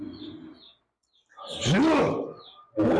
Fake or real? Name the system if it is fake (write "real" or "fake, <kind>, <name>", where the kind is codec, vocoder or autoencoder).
real